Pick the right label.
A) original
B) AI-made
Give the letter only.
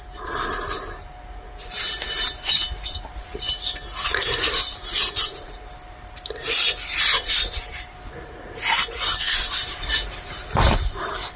A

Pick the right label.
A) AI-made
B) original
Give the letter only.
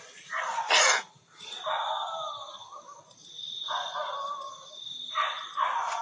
B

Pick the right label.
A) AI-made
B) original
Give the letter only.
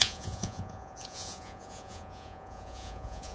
A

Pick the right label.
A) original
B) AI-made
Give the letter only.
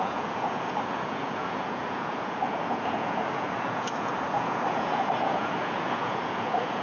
B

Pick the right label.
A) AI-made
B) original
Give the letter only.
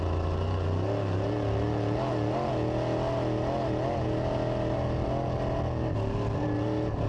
B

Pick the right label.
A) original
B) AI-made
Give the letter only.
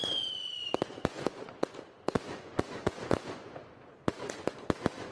B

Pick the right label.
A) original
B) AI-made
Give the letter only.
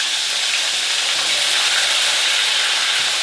A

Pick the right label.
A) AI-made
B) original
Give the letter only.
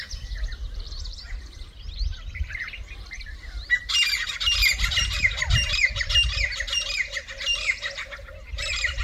B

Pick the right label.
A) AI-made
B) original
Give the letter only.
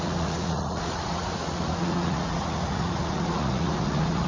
A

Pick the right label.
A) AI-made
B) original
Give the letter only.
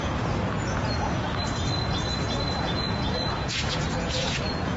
A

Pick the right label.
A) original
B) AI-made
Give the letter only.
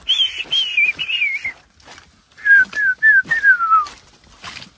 A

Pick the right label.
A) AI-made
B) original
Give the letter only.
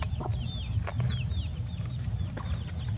B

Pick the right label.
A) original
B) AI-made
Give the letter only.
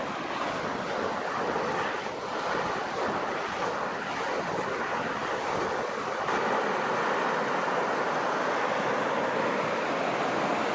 A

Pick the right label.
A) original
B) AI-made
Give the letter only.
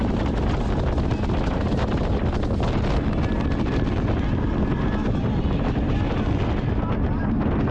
A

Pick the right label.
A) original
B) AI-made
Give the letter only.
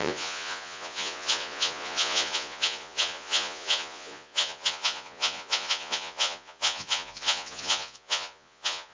B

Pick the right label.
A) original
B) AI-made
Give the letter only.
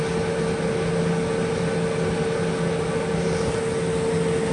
A